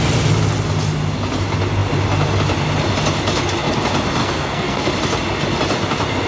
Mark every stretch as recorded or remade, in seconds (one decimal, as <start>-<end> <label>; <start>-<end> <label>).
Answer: 0.0-4.2 recorded; 4.2-4.9 remade; 4.9-6.3 recorded

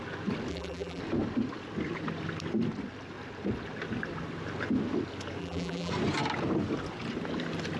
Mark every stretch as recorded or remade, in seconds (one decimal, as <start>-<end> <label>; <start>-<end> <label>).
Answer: 0.0-0.5 recorded; 0.5-1.0 remade; 1.0-5.4 recorded; 5.4-5.9 remade; 5.9-7.8 recorded

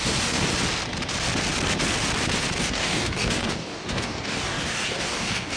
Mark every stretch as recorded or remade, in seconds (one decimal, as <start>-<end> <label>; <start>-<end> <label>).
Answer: 0.0-0.5 remade; 0.5-2.6 recorded; 2.6-5.6 remade

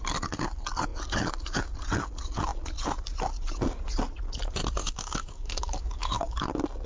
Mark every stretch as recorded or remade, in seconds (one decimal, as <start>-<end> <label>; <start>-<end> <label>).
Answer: 0.0-4.8 recorded; 4.8-6.4 remade; 6.4-6.9 recorded

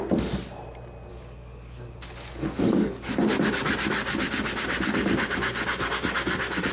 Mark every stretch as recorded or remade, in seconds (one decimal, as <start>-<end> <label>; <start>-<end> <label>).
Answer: 0.0-1.1 recorded; 1.1-3.1 remade; 3.1-6.7 recorded

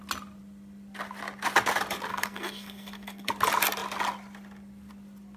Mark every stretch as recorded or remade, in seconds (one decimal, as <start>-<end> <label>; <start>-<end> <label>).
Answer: 0.0-2.1 recorded; 2.1-3.3 remade; 3.3-5.4 recorded

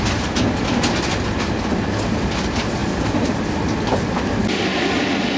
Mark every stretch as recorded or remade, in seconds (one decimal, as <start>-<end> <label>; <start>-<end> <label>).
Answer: 0.0-5.4 recorded

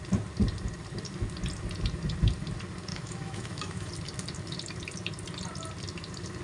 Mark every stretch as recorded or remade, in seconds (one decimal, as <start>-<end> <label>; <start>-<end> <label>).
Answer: 0.0-2.9 recorded; 2.9-3.9 remade; 3.9-6.4 recorded